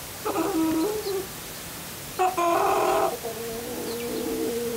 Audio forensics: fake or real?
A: real